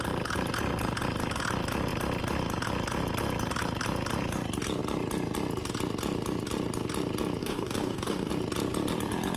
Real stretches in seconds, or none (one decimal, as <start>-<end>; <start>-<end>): 0.0-7.4; 8.3-9.4